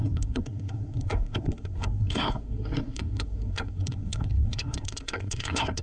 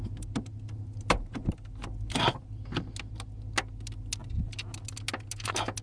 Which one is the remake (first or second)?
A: first